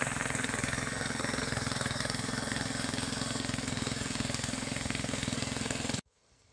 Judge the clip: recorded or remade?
remade